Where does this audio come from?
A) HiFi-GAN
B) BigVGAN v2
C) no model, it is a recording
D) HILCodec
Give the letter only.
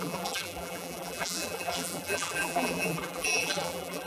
B